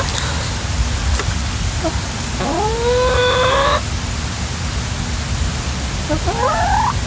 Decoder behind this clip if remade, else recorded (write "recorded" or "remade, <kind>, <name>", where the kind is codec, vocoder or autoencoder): recorded